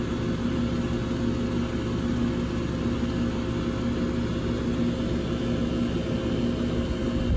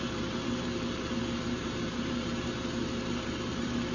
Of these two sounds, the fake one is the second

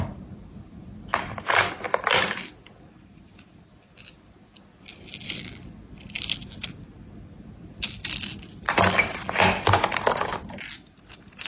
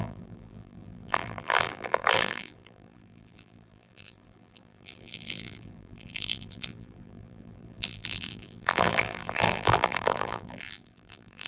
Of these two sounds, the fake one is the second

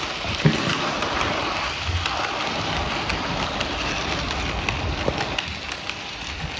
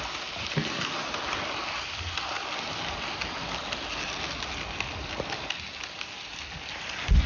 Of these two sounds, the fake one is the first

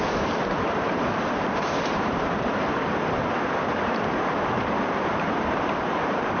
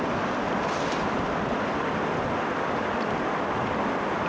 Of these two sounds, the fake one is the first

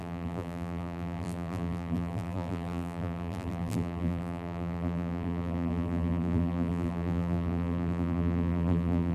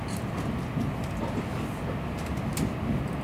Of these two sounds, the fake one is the first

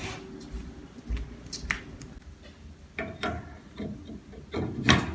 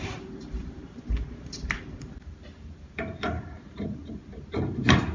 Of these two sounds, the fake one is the second